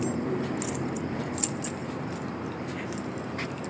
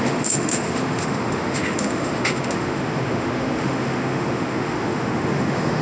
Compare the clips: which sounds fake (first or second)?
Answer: second